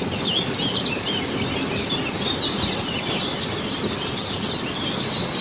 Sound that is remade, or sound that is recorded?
recorded